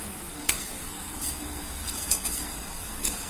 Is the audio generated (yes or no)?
yes